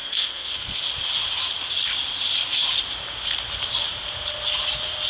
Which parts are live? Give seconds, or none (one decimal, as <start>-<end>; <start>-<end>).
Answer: 0.8-5.1

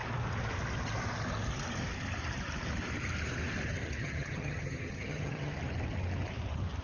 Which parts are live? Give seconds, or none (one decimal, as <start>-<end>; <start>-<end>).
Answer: 0.0-4.0; 5.5-6.8

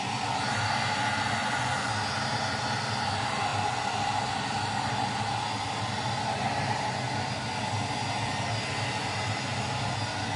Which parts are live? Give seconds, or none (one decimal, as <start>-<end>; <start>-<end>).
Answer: 0.0-1.4; 1.9-10.4

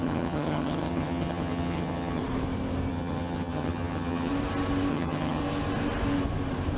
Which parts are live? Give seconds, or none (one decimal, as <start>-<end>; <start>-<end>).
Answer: 2.2-2.9; 4.3-4.9; 5.4-6.8